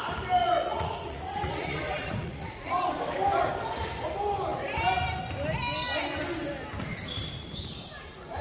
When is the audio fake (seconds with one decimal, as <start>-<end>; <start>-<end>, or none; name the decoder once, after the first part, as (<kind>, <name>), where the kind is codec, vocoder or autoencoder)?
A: 0.4-2.7 (vocoder, Vocos)